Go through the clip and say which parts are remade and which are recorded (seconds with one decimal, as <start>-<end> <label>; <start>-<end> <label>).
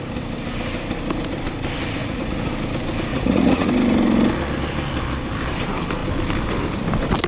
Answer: 0.0-2.0 recorded; 2.0-2.5 remade; 2.5-3.1 recorded; 3.1-3.7 remade; 3.7-7.3 recorded